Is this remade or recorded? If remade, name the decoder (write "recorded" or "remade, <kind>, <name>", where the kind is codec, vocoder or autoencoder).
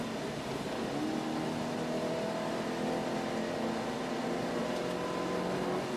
recorded